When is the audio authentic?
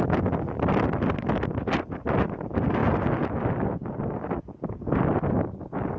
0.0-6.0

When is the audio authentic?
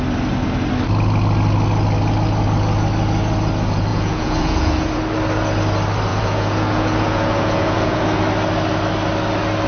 0.0-3.9; 5.0-6.1; 8.0-9.7